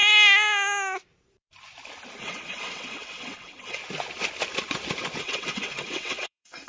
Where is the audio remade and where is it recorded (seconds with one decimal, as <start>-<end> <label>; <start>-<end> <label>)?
0.0-2.2 recorded; 2.2-3.8 remade; 3.8-5.2 recorded; 5.2-6.7 remade